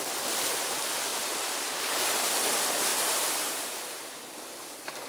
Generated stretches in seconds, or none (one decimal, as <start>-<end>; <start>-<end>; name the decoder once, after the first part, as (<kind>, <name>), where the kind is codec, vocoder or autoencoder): 1.1-1.9 (vocoder, BigVGAN v2); 2.9-5.1